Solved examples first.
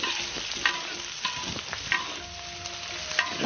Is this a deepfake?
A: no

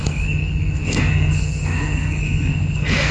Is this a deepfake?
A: yes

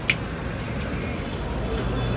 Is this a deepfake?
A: no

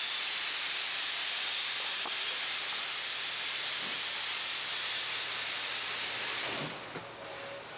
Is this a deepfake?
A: no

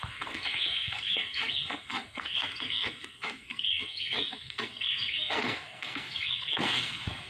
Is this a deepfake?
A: yes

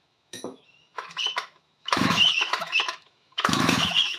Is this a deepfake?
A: yes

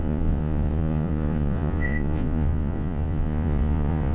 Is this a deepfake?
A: yes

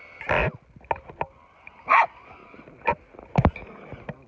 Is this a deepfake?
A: no